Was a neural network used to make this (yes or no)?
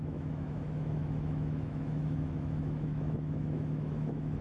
yes